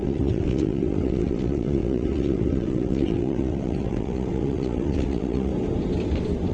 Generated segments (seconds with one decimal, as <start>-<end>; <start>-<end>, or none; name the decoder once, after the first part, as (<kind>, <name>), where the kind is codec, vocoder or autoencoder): 0.0-5.5 (vocoder, WaveNeXt)